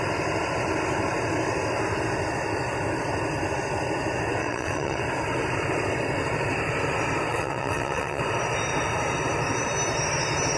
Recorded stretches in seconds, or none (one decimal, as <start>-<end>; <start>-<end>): 0.0-4.4; 5.0-7.3; 8.2-10.6